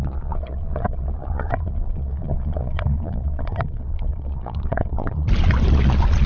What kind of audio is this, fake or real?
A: fake